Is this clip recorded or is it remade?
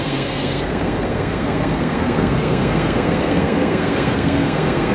remade